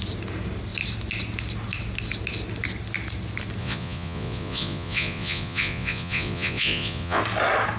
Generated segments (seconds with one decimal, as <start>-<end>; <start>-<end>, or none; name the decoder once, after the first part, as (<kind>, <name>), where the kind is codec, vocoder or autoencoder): 3.6-7.2 (vocoder, Vocos)